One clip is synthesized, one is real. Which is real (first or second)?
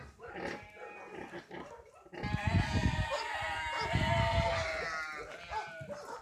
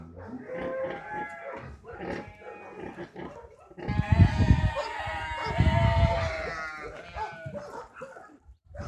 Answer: second